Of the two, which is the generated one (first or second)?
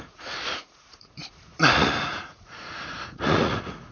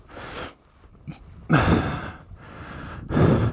first